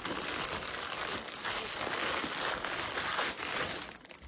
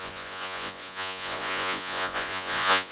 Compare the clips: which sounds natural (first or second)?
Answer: first